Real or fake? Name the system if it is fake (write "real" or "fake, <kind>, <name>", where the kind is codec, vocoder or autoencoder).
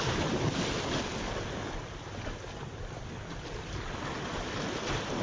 real